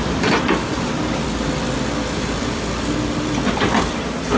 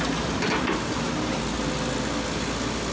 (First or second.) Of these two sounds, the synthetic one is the first